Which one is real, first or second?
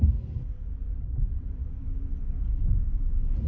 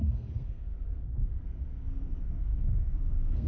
first